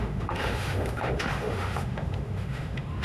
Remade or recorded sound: remade